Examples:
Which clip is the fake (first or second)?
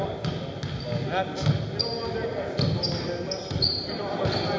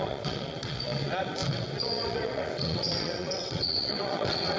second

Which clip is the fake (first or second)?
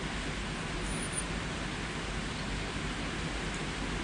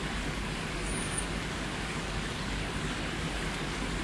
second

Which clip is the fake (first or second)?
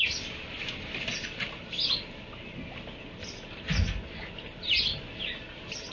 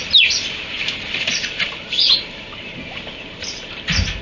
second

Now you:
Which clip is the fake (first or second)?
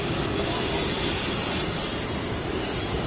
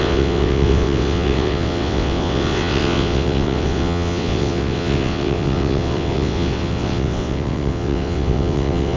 second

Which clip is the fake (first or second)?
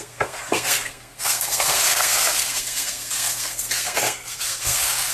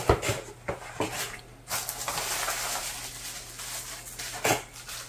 first